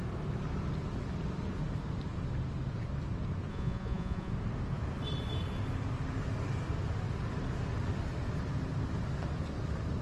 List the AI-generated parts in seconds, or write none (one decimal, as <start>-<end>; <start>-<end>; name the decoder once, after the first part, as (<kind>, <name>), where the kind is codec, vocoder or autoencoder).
3.5-4.3 (vocoder, Vocos)